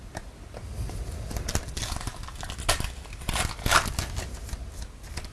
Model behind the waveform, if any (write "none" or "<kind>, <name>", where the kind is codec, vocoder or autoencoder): none